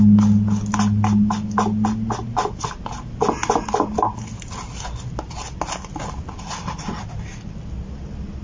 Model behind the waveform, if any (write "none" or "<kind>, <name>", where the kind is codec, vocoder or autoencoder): none